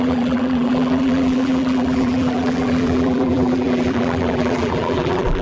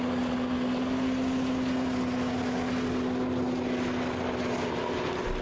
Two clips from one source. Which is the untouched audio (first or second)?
second